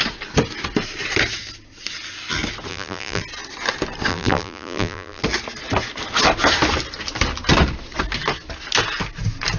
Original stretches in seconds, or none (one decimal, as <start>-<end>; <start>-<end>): 0.0-2.7; 3.2-4.1; 5.2-9.6